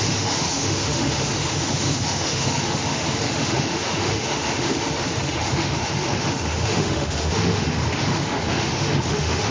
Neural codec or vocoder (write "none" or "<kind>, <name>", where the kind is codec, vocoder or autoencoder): autoencoder, DAC-VAE